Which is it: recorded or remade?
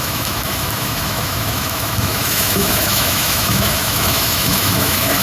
remade